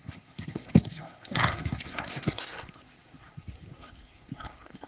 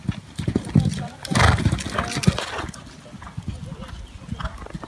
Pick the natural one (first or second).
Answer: second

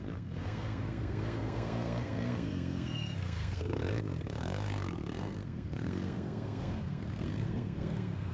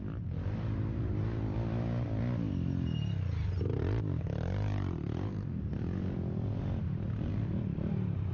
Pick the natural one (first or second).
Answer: second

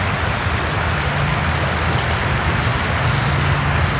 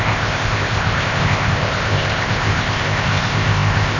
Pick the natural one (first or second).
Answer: first